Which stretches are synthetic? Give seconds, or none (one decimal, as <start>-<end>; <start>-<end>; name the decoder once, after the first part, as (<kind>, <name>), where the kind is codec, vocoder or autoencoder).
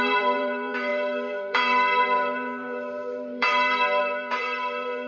0.0-5.1 (vocoder, BigVGAN v2)